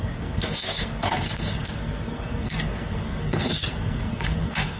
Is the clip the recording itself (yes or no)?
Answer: no